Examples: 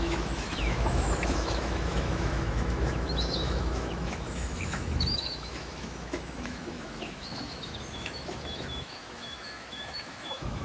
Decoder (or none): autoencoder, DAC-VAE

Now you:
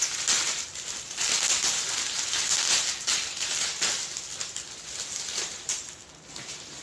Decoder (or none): none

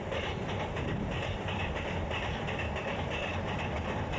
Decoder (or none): none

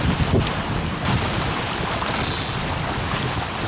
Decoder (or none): none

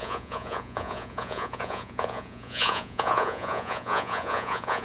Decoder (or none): vocoder, Vocos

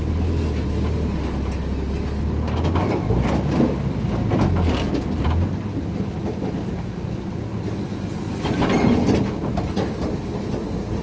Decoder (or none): none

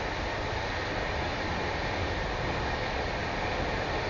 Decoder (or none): none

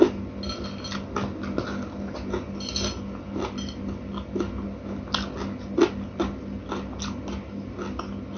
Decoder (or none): none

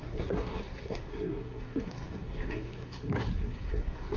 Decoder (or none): codec, SNAC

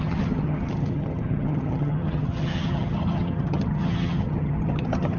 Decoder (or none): vocoder, HiFi-GAN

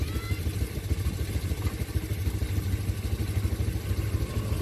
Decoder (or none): none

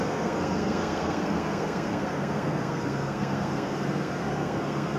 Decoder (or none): codec, SNAC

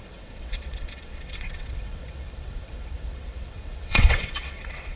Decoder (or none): vocoder, WaveNeXt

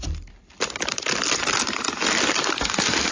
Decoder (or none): none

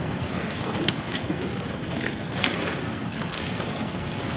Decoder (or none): codec, SNAC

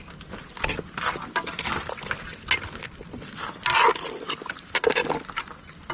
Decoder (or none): none